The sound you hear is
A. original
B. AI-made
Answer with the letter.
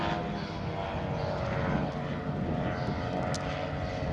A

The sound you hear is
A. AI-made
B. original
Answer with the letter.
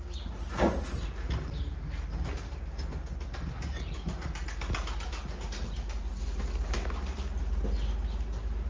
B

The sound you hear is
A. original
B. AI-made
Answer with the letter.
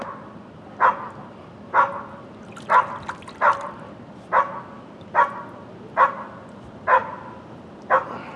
A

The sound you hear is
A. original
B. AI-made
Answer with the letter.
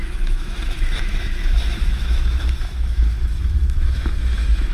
B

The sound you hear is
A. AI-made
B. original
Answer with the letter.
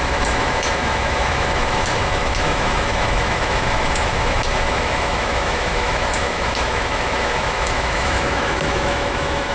A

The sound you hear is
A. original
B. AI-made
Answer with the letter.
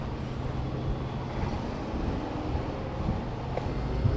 A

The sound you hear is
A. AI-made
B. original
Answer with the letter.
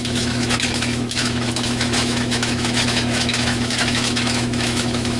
A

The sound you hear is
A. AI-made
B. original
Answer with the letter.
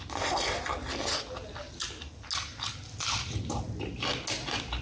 B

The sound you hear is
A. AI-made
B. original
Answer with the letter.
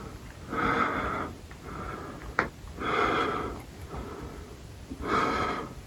B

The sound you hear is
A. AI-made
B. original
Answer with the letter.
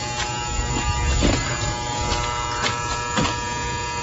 B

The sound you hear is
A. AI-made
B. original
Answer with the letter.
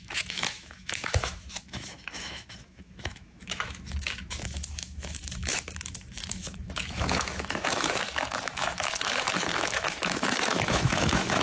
A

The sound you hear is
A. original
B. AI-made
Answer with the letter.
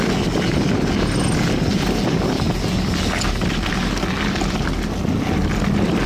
A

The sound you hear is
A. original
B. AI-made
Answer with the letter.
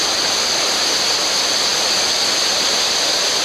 A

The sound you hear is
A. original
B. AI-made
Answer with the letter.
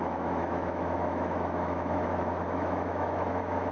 B